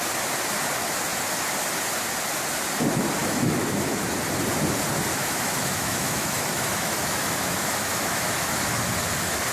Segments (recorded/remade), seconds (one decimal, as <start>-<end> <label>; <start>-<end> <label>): 0.0-3.2 recorded; 3.2-4.0 remade; 4.0-5.1 recorded; 5.1-8.6 remade; 8.6-9.5 recorded